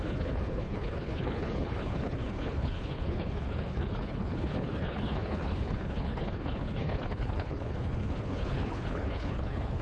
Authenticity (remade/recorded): remade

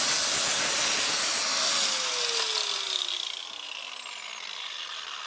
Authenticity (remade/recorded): recorded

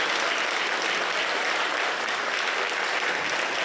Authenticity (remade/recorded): recorded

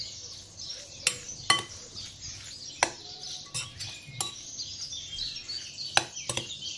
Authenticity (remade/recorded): recorded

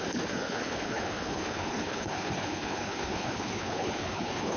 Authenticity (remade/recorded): remade